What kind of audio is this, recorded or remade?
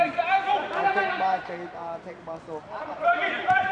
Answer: remade